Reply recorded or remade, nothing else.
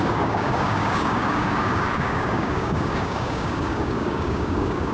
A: remade